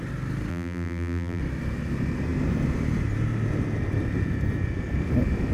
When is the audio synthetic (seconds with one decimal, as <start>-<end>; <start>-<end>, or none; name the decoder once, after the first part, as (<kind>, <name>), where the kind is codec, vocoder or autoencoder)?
0.5-1.4 (vocoder, BigVGAN v2)